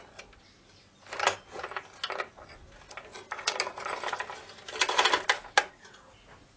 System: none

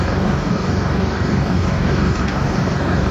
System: codec, DAC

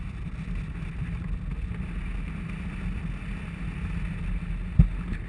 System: none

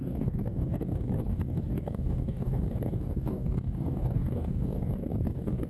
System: codec, DAC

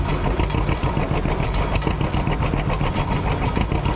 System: none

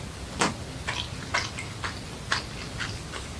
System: none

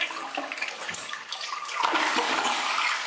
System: codec, DAC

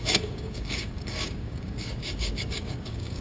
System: codec, DAC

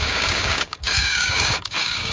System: codec, DAC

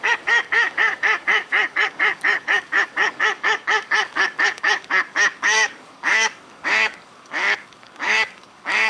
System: codec, DAC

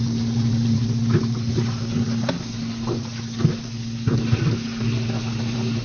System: none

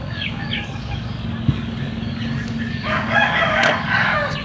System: codec, DAC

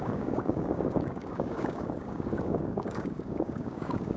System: codec, DAC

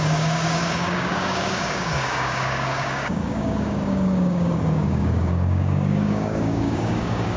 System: codec, DAC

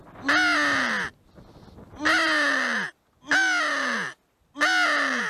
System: none